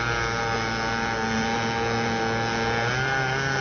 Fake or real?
real